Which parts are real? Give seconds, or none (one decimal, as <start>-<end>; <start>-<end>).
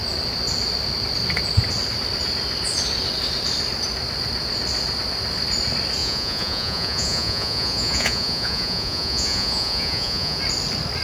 0.0-6.0; 10.4-11.0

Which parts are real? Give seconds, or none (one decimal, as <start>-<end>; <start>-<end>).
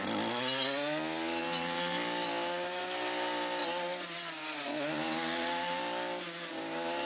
0.0-7.1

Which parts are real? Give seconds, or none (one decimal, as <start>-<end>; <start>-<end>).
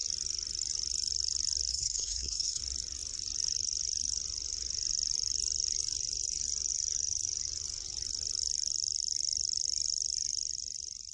0.0-1.7; 2.6-11.1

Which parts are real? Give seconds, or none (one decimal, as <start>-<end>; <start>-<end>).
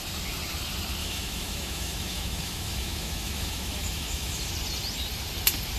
0.0-1.0; 4.5-5.8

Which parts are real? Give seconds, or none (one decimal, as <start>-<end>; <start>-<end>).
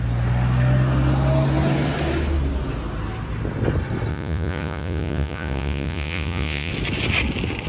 0.0-4.1; 6.7-7.7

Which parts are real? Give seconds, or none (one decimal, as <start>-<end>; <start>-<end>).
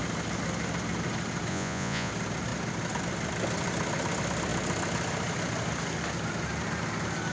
0.0-1.5; 2.1-7.3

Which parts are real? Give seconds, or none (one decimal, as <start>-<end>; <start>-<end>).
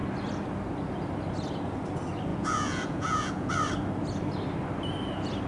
0.0-2.3; 3.5-5.5